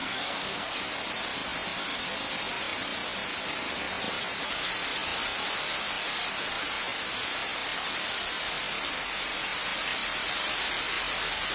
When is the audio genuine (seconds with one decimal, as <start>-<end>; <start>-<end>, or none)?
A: 0.8-11.5